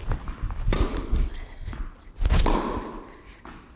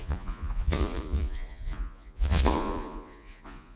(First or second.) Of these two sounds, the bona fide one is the first